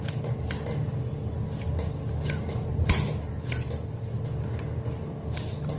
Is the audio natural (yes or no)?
yes